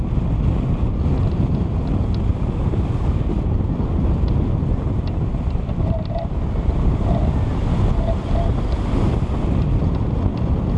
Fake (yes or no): no